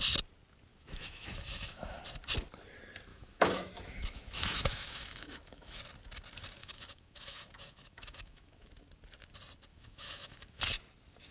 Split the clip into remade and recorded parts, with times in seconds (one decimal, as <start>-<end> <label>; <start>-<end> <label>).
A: 0.0-0.7 recorded; 0.7-2.0 remade; 2.0-3.1 recorded; 3.1-5.8 remade; 5.8-6.6 recorded; 6.6-8.7 remade; 8.7-9.7 recorded; 9.7-10.6 remade; 10.6-11.3 recorded